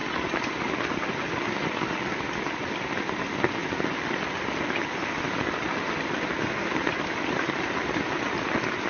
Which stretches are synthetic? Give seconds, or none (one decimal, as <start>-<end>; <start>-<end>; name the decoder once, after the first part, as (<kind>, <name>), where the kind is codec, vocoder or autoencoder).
3.1-3.6 (vocoder, BigVGAN v2); 4.4-8.9